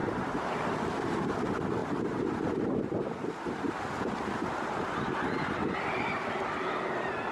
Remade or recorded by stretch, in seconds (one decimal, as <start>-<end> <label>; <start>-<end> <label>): 0.0-0.5 remade; 0.5-1.8 recorded; 1.8-3.3 remade; 3.3-4.8 recorded; 4.8-6.0 remade; 6.0-7.3 recorded

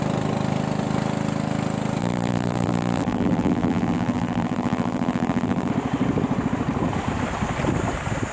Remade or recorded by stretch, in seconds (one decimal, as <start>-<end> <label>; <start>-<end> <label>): 0.0-2.0 recorded; 2.0-5.7 remade; 5.7-8.3 recorded

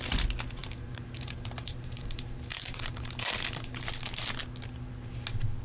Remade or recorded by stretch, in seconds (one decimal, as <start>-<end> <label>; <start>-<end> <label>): 0.0-0.6 recorded; 0.6-3.9 remade; 3.9-5.6 recorded

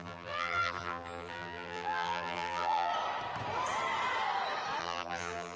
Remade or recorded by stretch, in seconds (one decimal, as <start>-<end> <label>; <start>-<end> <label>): 0.0-2.9 remade; 2.9-4.8 recorded; 4.8-5.6 remade

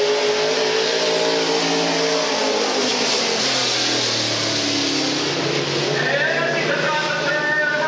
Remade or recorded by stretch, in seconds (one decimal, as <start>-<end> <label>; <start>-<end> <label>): 0.0-2.9 recorded; 2.9-3.4 remade; 3.4-7.9 recorded

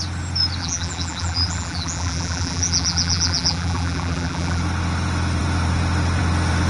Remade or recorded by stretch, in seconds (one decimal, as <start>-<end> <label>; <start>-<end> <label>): 0.0-0.6 recorded; 0.6-4.6 remade; 4.6-6.7 recorded

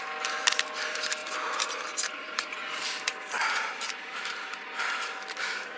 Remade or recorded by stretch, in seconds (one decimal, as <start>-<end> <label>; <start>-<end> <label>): 0.0-1.2 recorded; 1.2-4.7 remade; 4.7-5.8 recorded

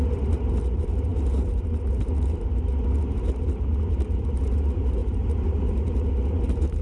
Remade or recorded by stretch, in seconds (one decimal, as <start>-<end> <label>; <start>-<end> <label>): 0.0-6.8 remade